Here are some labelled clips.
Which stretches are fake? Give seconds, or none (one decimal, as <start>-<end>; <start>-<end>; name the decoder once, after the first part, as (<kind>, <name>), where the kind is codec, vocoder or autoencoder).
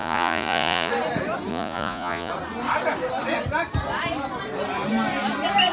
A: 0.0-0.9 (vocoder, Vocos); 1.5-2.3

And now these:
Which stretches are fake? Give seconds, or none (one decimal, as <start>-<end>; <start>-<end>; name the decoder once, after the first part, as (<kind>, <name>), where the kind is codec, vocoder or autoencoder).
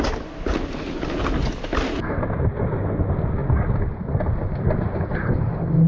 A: none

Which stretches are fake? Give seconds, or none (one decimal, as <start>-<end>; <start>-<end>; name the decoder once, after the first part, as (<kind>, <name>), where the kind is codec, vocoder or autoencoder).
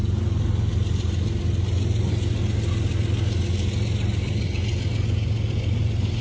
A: none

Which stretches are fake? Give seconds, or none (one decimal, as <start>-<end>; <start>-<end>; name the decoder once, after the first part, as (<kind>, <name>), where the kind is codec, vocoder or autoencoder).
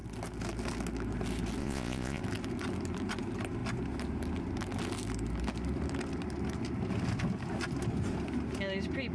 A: 1.6-2.2 (vocoder, Vocos)